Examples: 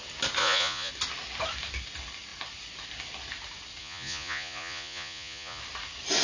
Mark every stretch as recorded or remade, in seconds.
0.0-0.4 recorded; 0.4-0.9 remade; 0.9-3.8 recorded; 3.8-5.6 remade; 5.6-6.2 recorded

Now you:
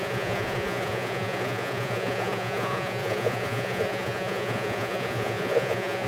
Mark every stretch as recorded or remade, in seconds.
0.0-6.1 remade